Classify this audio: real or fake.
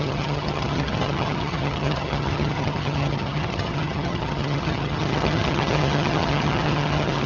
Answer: fake